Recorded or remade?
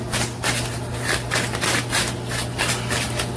recorded